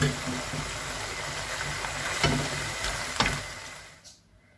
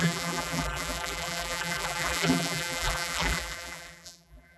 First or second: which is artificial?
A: second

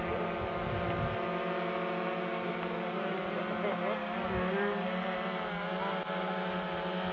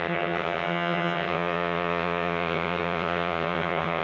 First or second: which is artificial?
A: second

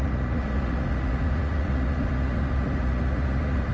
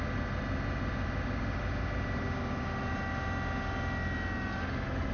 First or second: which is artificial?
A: first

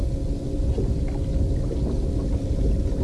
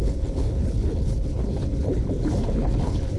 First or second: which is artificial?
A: second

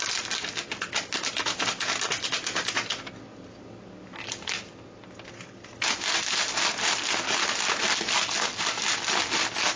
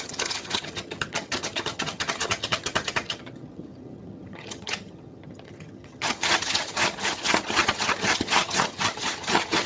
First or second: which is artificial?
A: second